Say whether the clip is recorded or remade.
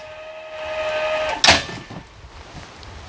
recorded